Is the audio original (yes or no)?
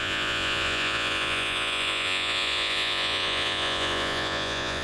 no